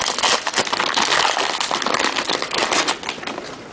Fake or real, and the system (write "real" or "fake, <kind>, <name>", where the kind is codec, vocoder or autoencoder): real